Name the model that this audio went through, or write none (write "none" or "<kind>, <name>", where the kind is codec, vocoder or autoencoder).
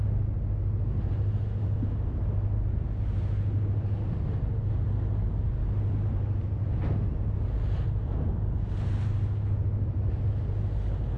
none